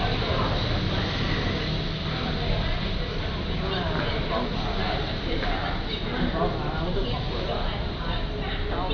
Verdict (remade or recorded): recorded